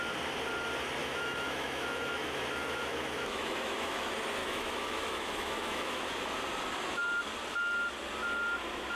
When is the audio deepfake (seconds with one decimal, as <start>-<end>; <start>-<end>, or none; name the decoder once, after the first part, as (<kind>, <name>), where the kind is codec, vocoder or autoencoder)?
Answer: 1.0-4.0 (autoencoder, DAC-VAE); 4.4-6.3